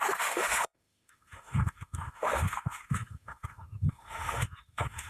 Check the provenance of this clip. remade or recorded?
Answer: remade